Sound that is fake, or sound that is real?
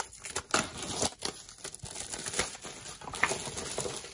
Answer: real